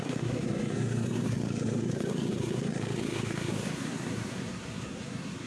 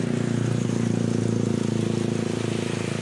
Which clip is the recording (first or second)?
second